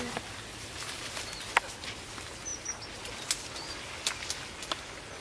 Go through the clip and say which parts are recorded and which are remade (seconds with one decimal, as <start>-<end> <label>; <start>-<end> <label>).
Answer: 0.0-5.2 recorded

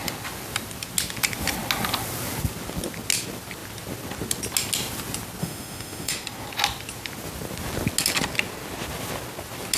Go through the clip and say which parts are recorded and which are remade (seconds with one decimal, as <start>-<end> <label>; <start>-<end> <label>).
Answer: 0.0-5.4 recorded; 5.4-6.1 remade; 6.1-9.8 recorded

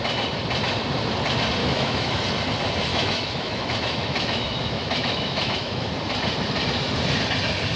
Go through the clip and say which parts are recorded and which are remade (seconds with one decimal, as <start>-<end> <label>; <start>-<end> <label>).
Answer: 0.0-1.6 recorded; 1.6-2.2 remade; 2.2-2.9 recorded; 2.9-5.9 remade; 5.9-7.8 recorded

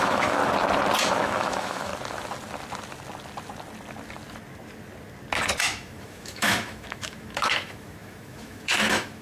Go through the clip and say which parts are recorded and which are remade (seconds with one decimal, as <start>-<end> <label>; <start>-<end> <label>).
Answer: 0.0-0.4 remade; 0.4-1.1 recorded; 1.1-1.9 remade; 1.9-5.6 recorded; 5.6-9.2 remade

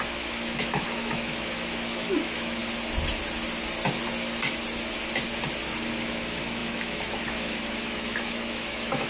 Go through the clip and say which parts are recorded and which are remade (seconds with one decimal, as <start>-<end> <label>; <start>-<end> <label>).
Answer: 0.0-2.6 remade; 2.6-5.9 recorded; 5.9-9.1 remade